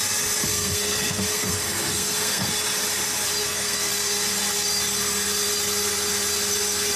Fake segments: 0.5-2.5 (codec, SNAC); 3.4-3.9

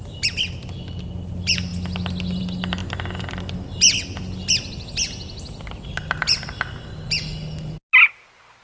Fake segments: none

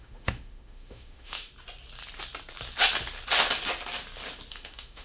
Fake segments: 0.0-1.5 (autoencoder, DAC-VAE); 4.5-5.0

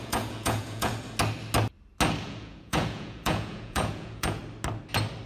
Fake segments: 0.0-0.9 (vocoder, Vocos); 2.2-4.4

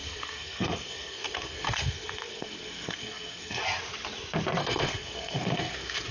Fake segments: 0.0-3.6 (codec, SNAC); 4.6-6.1

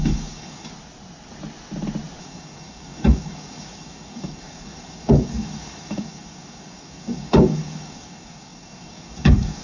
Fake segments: 0.0-0.7 (codec, DAC); 2.2-9.6